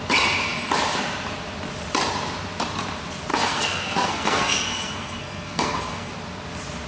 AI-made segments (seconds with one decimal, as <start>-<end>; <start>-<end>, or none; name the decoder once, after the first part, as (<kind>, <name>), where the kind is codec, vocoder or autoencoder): 3.3-6.1 (codec, SNAC)